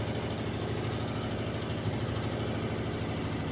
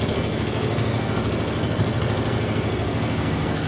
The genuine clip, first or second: first